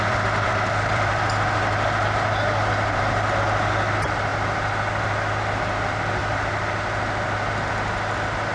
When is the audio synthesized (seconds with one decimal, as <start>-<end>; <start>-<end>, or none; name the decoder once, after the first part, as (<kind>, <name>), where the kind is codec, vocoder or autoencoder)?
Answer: 0.0-4.3 (vocoder, BigVGAN v2); 5.6-6.2